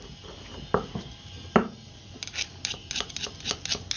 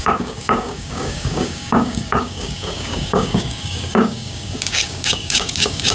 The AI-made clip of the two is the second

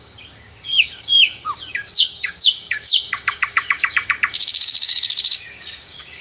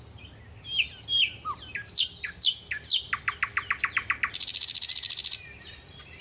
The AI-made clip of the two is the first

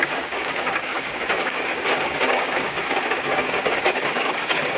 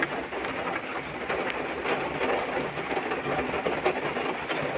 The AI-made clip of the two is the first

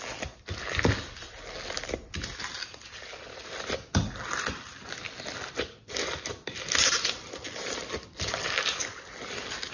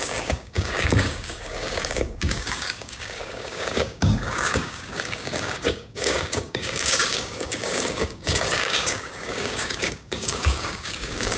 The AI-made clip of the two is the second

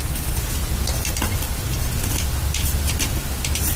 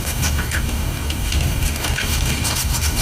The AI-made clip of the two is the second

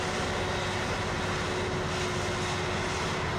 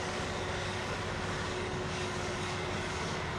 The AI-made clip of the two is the second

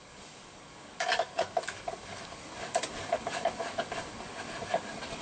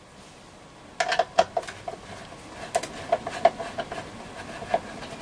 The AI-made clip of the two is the first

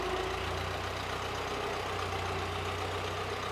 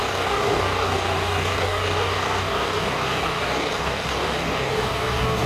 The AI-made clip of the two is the second